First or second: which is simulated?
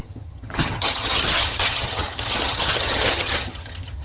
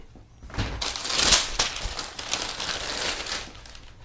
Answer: first